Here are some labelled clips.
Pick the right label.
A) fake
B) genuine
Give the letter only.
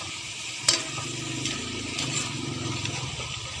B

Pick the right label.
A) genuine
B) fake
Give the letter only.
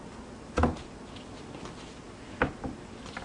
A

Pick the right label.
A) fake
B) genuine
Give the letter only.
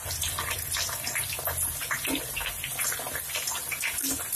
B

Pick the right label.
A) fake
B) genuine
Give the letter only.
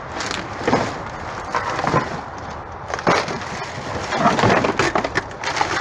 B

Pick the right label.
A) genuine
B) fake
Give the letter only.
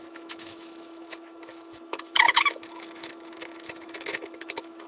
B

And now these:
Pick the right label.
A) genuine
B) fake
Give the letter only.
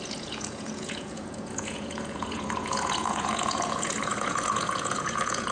B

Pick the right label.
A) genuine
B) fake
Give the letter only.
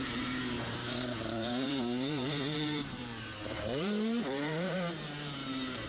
B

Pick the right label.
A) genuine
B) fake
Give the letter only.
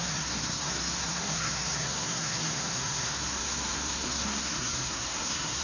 B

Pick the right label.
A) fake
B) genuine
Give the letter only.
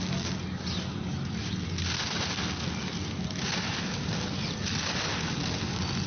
B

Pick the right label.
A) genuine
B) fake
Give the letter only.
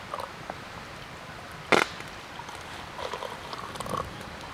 A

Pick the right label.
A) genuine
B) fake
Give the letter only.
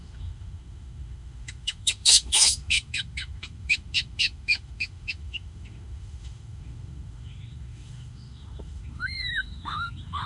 B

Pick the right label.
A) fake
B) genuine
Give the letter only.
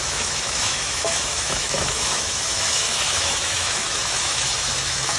A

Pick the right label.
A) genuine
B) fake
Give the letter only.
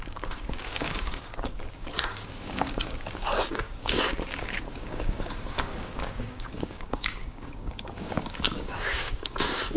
B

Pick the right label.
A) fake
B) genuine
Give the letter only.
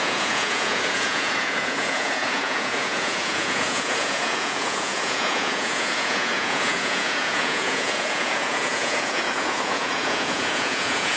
A